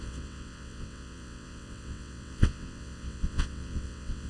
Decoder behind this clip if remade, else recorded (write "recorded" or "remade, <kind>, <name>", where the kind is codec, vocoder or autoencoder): remade, vocoder, WaveNeXt